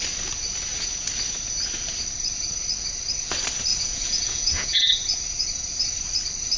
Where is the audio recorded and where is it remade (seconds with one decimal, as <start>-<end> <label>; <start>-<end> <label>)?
0.0-3.7 recorded; 3.7-4.9 remade; 4.9-6.6 recorded